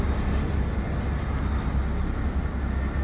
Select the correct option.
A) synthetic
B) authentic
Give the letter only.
B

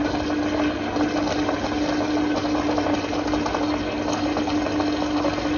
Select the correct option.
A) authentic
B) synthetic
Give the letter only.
A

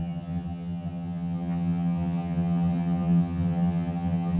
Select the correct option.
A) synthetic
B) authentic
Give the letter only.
A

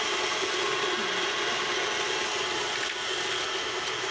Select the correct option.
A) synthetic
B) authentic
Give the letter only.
B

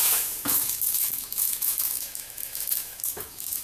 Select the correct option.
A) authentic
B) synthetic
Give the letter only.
B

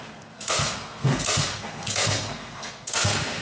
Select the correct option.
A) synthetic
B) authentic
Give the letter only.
A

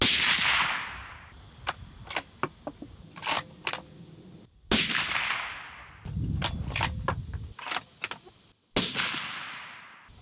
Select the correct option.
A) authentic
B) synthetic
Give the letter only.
A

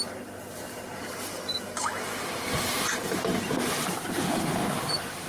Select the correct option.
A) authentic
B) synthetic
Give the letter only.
B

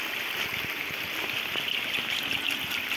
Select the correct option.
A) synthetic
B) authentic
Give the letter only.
B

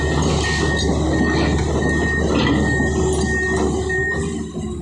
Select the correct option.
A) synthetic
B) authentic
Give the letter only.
B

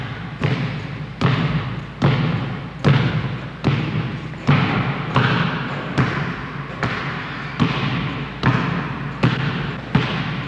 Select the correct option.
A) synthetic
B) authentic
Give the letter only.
B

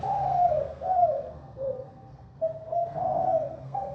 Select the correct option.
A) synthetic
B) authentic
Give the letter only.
A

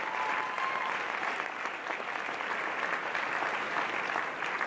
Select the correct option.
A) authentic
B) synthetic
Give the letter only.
A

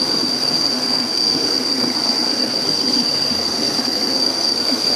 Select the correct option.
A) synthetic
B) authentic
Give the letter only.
A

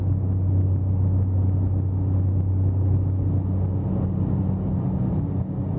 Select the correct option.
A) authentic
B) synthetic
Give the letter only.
A